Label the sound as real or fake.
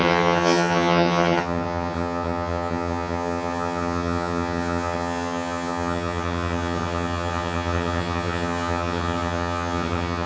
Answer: fake